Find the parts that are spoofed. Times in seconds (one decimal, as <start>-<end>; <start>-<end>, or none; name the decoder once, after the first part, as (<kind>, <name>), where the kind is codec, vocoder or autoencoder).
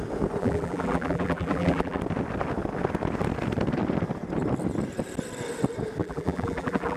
0.4-2.0 (vocoder, BigVGAN v2); 6.0-7.0